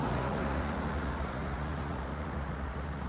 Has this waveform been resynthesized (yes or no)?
yes